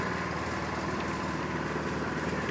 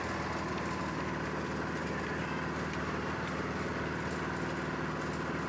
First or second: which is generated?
first